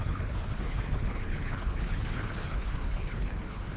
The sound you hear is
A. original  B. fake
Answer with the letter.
B